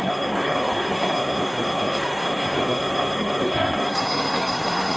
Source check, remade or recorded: remade